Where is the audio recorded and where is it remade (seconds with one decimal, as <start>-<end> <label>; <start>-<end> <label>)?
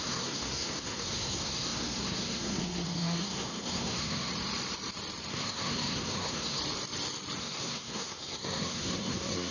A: 0.0-4.3 remade; 4.3-5.3 recorded; 5.3-6.6 remade; 6.6-7.4 recorded; 7.4-9.5 remade